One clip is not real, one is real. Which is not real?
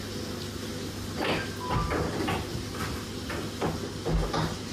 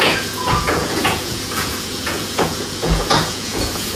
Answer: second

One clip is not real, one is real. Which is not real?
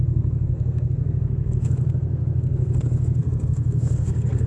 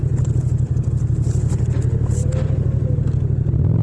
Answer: first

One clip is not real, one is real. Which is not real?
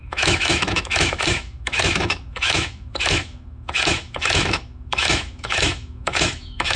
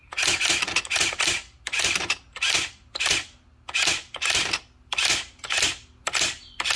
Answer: first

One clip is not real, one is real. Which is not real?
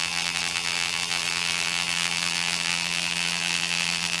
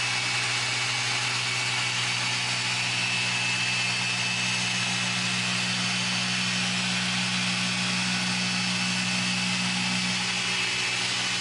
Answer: first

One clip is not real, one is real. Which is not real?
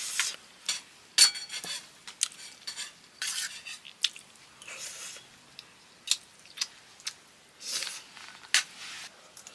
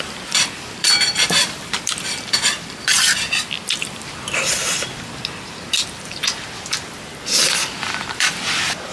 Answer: second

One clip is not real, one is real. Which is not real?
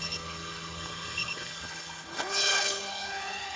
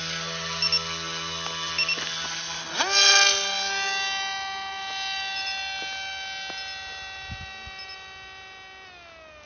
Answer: first